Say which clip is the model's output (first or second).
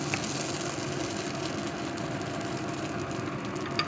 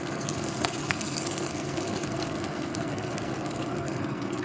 second